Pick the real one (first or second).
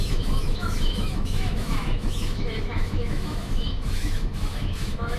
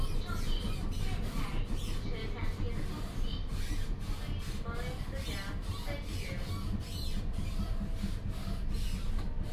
second